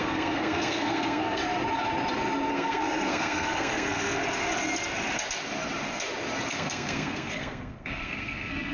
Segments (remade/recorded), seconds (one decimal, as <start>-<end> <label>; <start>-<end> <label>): 0.0-1.4 remade; 1.4-2.5 recorded; 2.5-4.2 remade; 4.2-6.5 recorded; 6.5-8.7 remade